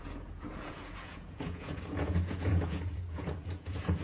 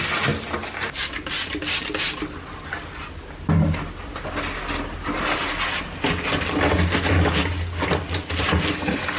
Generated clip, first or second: first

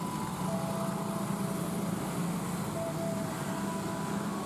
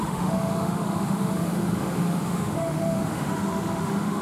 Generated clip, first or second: second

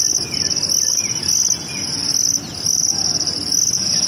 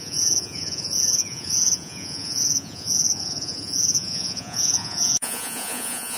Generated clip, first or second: second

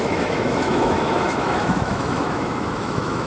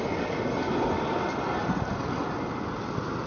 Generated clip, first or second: first